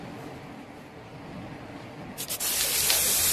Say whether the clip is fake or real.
real